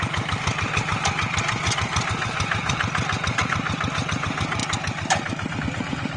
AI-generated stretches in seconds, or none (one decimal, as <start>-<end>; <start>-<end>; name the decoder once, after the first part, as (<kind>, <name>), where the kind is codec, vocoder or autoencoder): 0.0-6.2 (vocoder, BigVGAN v2)